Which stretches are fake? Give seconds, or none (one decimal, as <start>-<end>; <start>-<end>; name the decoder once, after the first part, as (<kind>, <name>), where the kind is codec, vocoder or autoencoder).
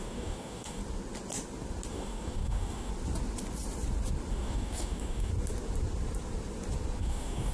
0.0-0.8 (codec, DAC); 1.9-2.9; 4.3-5.3; 7.0-7.5